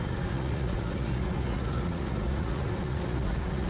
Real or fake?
fake